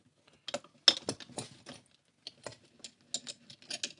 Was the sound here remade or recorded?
recorded